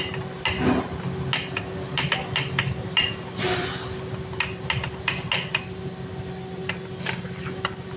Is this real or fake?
real